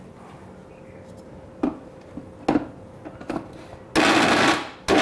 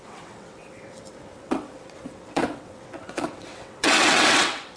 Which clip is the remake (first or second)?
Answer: second